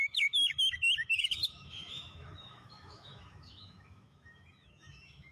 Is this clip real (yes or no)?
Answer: no